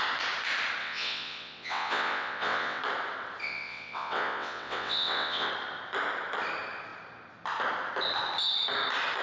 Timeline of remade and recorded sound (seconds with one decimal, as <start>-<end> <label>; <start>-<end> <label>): 0.0-0.8 recorded; 0.8-2.8 remade; 2.8-3.4 recorded; 3.4-5.5 remade; 5.5-9.2 recorded